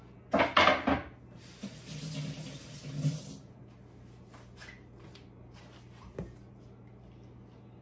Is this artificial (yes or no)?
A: no